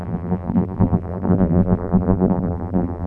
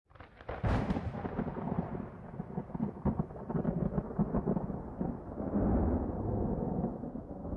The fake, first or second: first